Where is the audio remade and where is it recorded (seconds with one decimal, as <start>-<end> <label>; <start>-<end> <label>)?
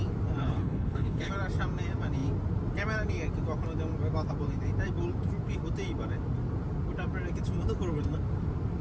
0.0-0.4 recorded; 0.4-1.3 remade; 1.3-8.8 recorded